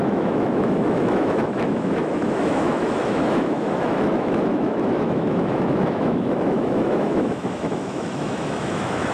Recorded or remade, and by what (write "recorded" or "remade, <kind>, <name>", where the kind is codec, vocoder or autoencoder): remade, autoencoder, DAC-VAE